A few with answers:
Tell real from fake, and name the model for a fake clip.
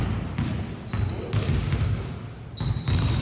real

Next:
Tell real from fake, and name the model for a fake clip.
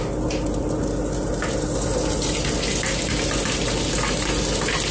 real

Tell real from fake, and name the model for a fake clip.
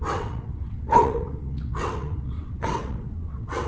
fake, vocoder, WaveNeXt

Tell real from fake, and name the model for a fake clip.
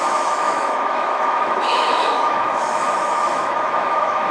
fake, autoencoder, DAC-VAE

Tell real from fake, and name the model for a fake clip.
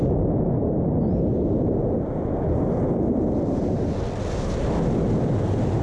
real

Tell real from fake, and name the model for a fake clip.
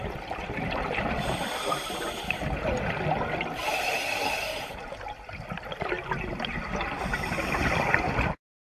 real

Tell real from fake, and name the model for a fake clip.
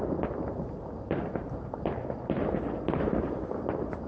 real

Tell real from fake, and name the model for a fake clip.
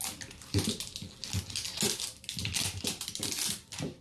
real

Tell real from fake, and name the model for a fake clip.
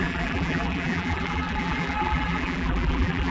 fake, vocoder, BigVGAN v2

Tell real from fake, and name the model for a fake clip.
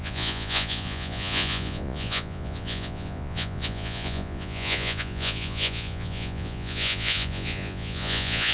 fake, vocoder, Vocos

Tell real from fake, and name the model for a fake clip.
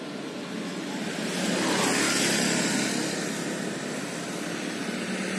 real